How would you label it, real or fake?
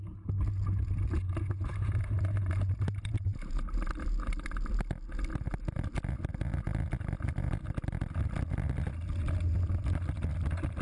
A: real